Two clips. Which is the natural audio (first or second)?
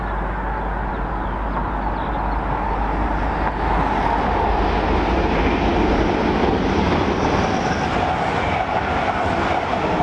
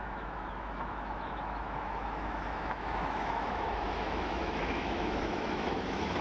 first